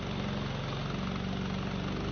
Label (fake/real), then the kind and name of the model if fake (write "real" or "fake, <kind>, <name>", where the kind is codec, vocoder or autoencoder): real